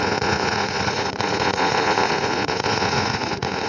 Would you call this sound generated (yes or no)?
yes